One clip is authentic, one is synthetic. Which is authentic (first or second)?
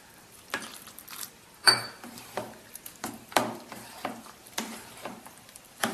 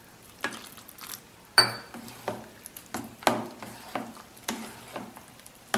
second